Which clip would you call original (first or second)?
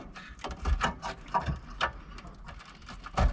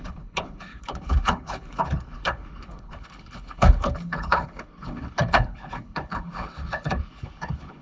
first